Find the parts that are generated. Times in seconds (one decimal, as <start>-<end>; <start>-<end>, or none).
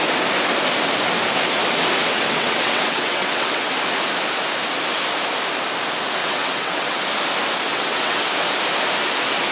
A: 2.0-3.7; 6.2-7.0; 7.7-8.3